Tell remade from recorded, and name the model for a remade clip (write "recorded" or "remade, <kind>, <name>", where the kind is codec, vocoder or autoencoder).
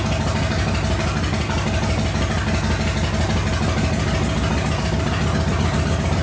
recorded